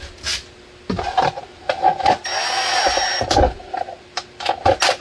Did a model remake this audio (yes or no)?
no